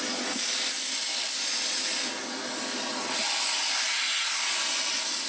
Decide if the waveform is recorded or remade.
recorded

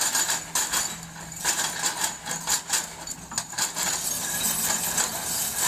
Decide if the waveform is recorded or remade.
recorded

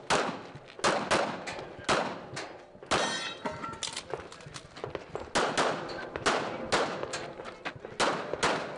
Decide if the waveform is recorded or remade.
recorded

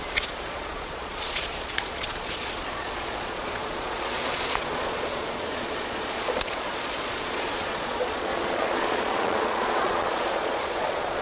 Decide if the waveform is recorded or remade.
remade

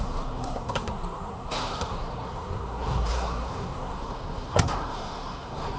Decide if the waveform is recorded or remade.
remade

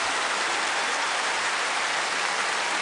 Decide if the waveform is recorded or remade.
recorded